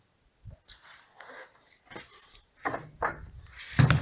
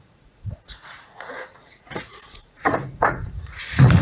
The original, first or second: first